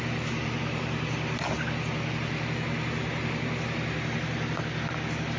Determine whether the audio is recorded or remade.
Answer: recorded